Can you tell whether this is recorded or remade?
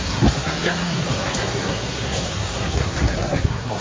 remade